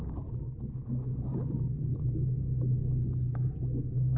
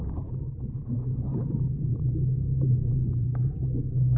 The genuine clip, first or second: first